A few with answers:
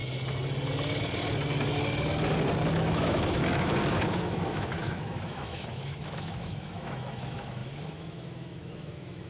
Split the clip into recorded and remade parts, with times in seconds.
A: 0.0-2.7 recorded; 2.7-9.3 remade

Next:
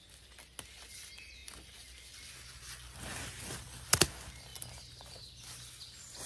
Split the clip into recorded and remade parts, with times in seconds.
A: 0.0-6.3 recorded

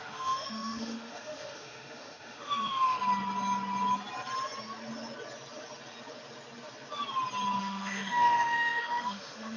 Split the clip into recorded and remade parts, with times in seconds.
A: 0.0-3.0 remade; 3.0-7.6 recorded; 7.6-9.6 remade

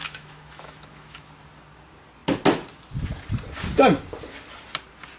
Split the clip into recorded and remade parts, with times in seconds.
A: 0.0-1.3 remade; 1.3-5.2 recorded

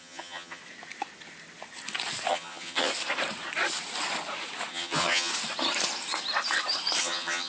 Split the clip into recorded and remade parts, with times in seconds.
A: 0.0-0.6 remade; 0.6-2.3 recorded; 2.3-2.9 remade; 2.9-4.7 recorded; 4.7-5.3 remade; 5.3-7.0 recorded; 7.0-7.5 remade

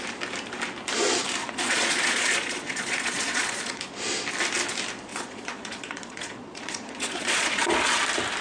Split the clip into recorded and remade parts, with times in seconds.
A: 0.0-1.4 recorded; 1.4-3.8 remade; 3.8-5.1 recorded; 5.1-8.0 remade; 8.0-8.4 recorded

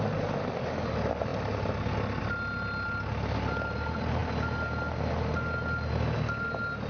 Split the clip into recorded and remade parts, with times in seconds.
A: 0.0-6.9 recorded

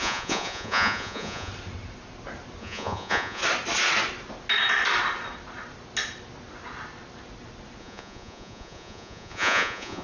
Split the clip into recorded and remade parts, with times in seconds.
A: 0.0-1.5 remade; 1.5-2.6 recorded; 2.6-3.4 remade; 3.4-7.8 recorded; 7.8-10.0 remade